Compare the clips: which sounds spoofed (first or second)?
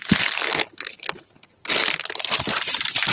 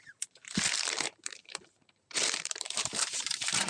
second